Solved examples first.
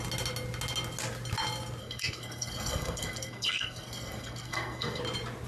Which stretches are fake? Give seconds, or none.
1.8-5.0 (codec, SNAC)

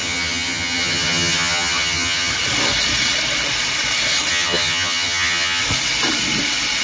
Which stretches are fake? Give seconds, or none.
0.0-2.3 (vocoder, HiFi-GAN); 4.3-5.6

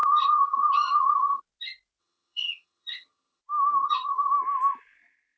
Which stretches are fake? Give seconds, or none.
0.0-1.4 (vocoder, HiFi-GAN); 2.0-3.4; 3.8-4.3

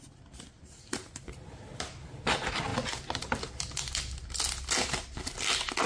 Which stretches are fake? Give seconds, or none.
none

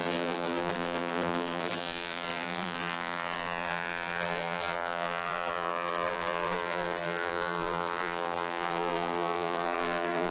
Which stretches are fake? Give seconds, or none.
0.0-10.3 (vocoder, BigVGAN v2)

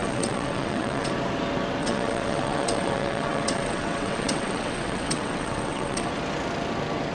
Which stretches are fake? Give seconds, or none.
0.0-1.1 (vocoder, WaveNeXt); 1.8-6.1

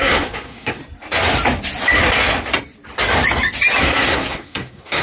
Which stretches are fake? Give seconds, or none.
0.0-0.8 (codec, SNAC); 3.8-5.0